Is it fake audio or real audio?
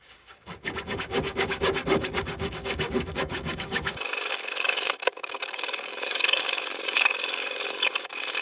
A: fake